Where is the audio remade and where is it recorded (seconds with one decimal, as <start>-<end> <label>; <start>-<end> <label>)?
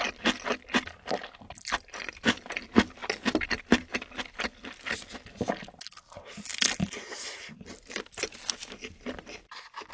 0.0-9.9 recorded